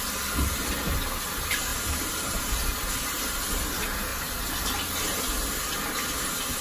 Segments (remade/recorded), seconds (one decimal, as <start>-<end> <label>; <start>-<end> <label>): 0.0-1.7 recorded; 1.7-3.2 remade; 3.2-6.6 recorded